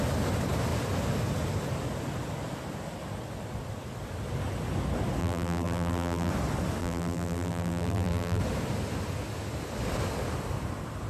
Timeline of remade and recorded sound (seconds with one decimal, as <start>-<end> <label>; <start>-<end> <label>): 0.0-5.2 recorded; 5.2-6.3 remade; 6.3-6.8 recorded; 6.8-8.4 remade; 8.4-11.1 recorded